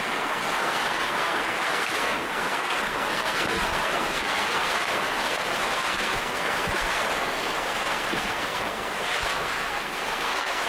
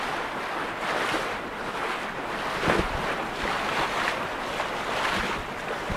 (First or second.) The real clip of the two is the second